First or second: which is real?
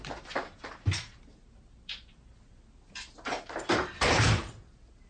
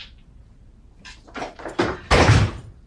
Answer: first